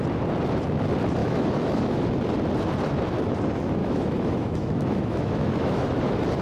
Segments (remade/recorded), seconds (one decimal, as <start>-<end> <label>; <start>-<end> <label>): 0.0-1.2 recorded; 1.2-2.1 remade; 2.1-3.8 recorded; 3.8-6.0 remade; 6.0-6.4 recorded